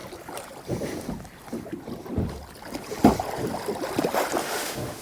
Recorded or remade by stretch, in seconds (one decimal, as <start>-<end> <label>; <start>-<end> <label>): 0.0-4.4 recorded; 4.4-5.0 remade